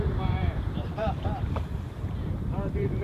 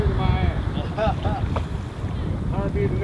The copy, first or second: first